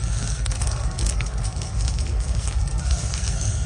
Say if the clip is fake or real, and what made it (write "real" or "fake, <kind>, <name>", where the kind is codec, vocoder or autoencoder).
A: fake, codec, SNAC